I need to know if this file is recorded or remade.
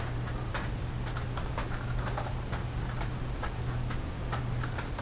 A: recorded